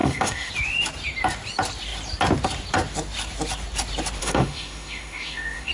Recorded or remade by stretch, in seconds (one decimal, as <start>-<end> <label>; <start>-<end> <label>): 0.0-0.5 remade; 0.5-4.2 recorded; 4.2-5.7 remade